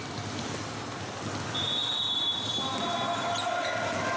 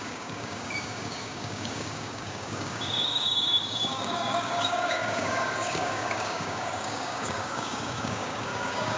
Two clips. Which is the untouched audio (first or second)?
first